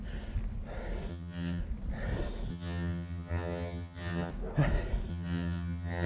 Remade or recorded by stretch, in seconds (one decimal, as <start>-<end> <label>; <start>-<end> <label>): 0.0-1.1 recorded; 1.1-1.6 remade; 1.6-2.5 recorded; 2.5-4.3 remade; 4.3-5.1 recorded; 5.1-6.1 remade